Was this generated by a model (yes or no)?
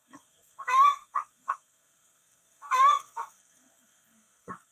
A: yes